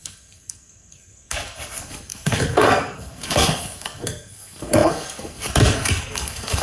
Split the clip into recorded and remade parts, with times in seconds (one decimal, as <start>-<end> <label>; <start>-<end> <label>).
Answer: 0.0-6.6 remade